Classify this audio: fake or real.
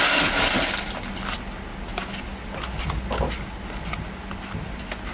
real